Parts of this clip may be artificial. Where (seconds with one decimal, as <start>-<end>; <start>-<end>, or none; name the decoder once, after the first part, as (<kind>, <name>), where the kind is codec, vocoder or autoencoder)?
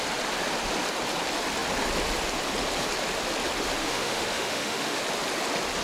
3.8-5.0 (autoencoder, DAC-VAE)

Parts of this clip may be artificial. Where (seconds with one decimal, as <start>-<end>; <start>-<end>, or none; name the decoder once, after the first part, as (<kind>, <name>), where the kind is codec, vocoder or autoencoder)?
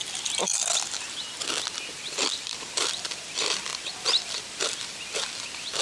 none